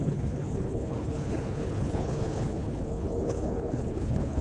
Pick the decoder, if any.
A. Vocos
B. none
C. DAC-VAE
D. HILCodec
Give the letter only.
D